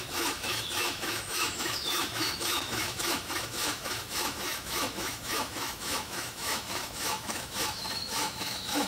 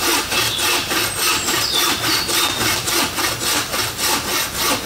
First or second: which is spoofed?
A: first